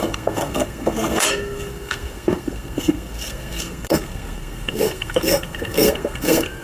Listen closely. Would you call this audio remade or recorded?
remade